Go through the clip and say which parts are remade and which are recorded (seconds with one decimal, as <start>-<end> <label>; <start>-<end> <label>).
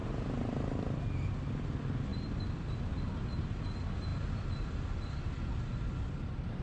0.0-1.5 remade; 1.5-4.1 recorded; 4.1-5.2 remade; 5.2-6.6 recorded